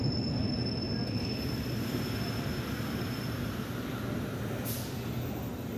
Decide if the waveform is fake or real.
real